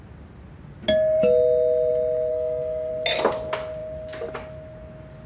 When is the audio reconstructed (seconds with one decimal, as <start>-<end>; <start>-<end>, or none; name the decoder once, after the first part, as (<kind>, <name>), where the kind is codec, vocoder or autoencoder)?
2.3-2.9 (codec, SNAC)